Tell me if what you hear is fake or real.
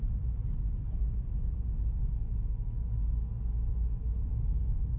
real